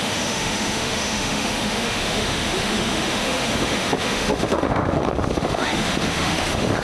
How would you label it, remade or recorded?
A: remade